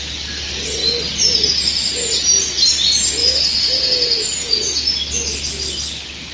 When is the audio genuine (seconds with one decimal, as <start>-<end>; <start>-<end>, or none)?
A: 0.0-6.3